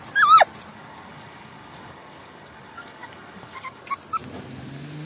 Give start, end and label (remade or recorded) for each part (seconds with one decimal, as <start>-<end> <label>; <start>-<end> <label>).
0.0-0.7 recorded; 0.7-3.8 remade; 3.8-5.1 recorded